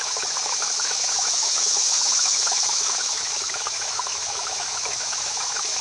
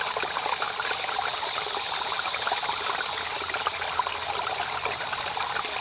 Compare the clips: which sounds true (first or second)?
second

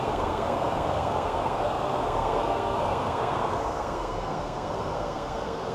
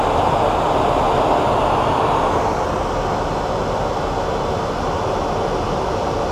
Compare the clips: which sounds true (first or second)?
second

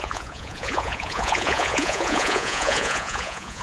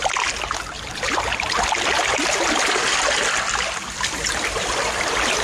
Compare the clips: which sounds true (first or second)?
second